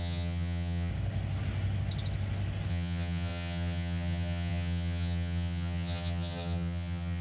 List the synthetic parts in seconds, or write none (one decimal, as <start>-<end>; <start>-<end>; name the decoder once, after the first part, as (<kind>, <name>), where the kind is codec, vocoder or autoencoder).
0.0-0.9 (vocoder, HiFi-GAN); 2.7-7.2